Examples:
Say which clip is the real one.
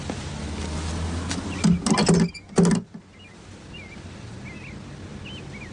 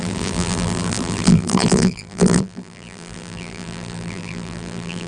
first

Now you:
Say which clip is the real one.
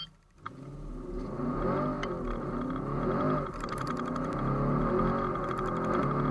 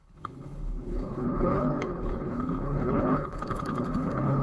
first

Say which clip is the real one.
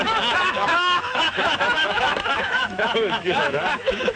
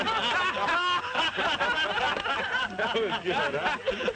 second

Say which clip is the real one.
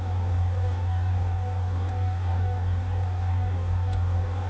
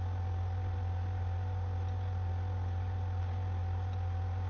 second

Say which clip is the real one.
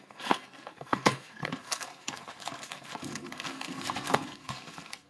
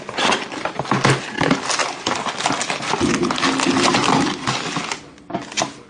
second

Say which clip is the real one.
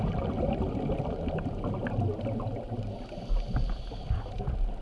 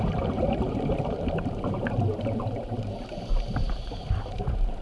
first